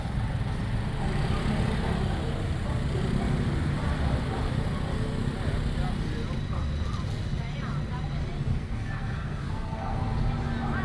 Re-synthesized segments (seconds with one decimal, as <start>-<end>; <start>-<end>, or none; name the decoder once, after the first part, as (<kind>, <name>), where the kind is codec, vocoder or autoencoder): 8.5-10.0 (codec, SNAC)